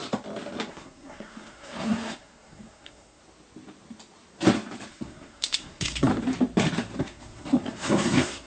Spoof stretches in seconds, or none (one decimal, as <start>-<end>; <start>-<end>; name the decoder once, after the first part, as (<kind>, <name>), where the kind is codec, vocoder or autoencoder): 0.7-3.2 (codec, SNAC); 4.9-6.1; 7.0-8.5